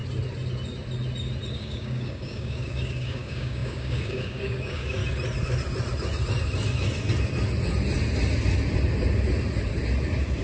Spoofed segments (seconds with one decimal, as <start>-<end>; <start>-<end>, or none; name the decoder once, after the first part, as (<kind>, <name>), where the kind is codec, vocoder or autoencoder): 1.5-5.0 (codec, DAC)